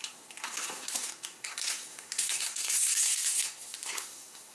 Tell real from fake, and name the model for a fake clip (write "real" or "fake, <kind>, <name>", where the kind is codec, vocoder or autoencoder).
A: fake, codec, SNAC